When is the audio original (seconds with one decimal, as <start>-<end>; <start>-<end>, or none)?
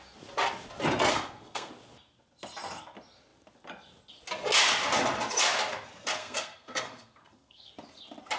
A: 0.0-1.1; 1.7-6.2; 7.7-8.4